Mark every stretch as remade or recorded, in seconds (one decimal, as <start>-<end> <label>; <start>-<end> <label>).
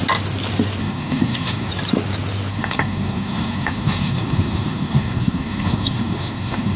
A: 0.0-0.8 recorded; 0.8-1.7 remade; 1.7-2.5 recorded; 2.5-6.8 remade